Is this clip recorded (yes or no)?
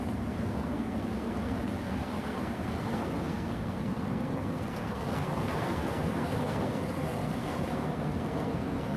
no